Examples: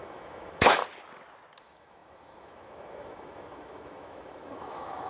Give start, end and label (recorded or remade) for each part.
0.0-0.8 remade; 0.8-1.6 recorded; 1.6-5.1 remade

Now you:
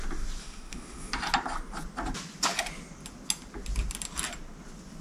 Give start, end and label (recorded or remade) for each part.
0.0-0.4 recorded; 0.4-1.1 remade; 1.1-5.0 recorded

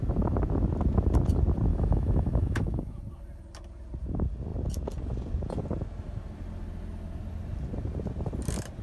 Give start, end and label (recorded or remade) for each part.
0.0-1.7 recorded; 1.7-3.0 remade; 3.0-8.8 recorded

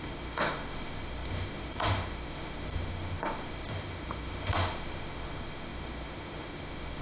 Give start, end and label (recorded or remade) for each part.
0.0-7.0 remade

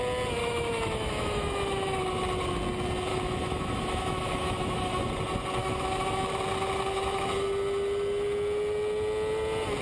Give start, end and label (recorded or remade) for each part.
0.0-0.4 recorded; 0.4-2.0 remade; 2.0-3.1 recorded; 3.1-5.1 remade; 5.1-5.6 recorded; 5.6-6.3 remade; 6.3-9.8 recorded

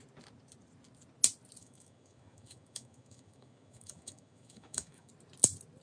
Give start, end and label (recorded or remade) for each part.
0.0-1.6 recorded; 1.6-5.1 remade; 5.1-5.8 recorded

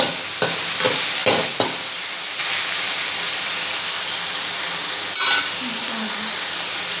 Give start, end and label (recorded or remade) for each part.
0.0-7.0 recorded